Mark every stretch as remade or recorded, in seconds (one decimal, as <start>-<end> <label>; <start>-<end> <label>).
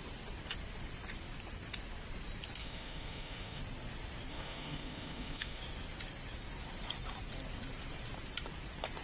0.0-2.6 recorded; 2.6-3.6 remade; 3.6-4.3 recorded; 4.3-5.6 remade; 5.6-9.0 recorded